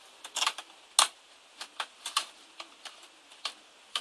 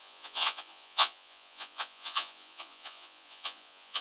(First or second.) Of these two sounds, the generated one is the second